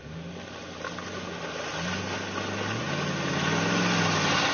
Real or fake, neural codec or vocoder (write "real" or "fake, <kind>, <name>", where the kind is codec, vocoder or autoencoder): real